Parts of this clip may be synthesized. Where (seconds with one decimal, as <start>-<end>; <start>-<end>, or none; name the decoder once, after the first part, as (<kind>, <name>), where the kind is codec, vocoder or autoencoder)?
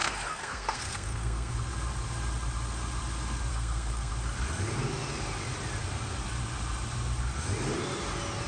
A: 0.0-1.5 (codec, SNAC); 3.5-4.1